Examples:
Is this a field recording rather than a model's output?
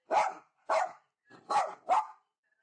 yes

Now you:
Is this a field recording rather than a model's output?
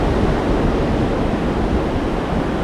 yes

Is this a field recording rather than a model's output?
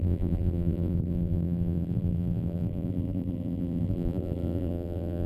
no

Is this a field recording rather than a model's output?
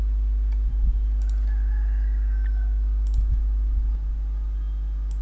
yes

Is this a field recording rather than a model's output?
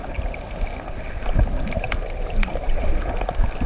yes